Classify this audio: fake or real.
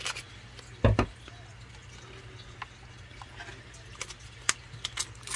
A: real